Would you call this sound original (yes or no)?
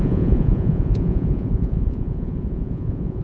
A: no